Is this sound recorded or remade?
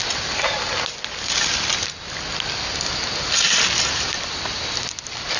recorded